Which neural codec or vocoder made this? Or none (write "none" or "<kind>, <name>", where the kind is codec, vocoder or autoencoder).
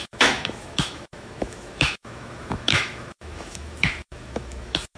autoencoder, DAC-VAE